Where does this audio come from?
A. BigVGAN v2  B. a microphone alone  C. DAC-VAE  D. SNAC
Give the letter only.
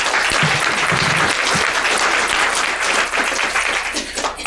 B